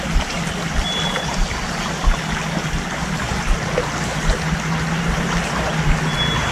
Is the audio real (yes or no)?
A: yes